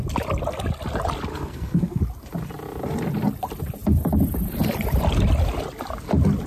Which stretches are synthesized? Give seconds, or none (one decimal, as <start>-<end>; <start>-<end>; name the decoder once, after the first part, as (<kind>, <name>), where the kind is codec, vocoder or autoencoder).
1.3-2.0 (codec, SNAC)